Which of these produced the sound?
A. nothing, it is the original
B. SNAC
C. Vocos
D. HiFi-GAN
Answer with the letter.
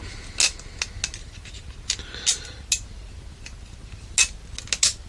A